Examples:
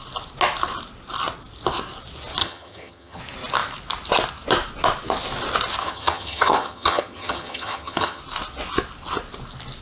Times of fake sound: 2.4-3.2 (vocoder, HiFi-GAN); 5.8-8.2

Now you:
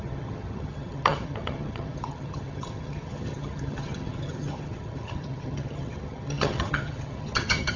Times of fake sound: 0.0-7.8 (vocoder, HiFi-GAN)

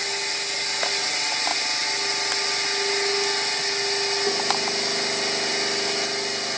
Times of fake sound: none

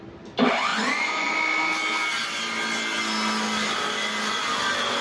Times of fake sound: 0.7-1.3 (vocoder, Vocos)

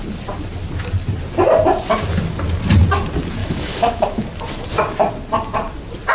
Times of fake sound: 3.4-4.2 (autoencoder, DAC-VAE)

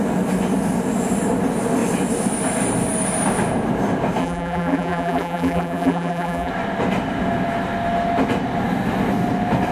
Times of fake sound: 4.2-6.5 (vocoder, BigVGAN v2)